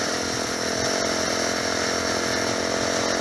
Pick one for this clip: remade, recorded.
recorded